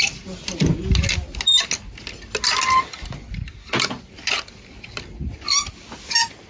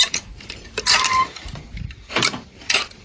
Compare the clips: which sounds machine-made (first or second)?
second